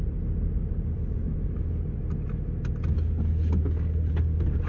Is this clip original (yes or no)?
yes